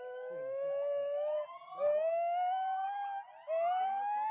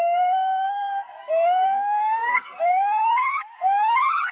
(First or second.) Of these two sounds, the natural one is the first